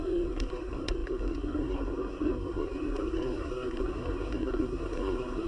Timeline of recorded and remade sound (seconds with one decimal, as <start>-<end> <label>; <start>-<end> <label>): 0.0-5.5 remade